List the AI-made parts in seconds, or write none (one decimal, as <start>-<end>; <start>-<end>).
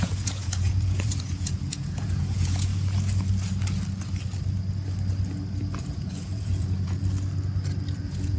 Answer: 0.0-2.7; 5.8-7.0; 8.0-8.4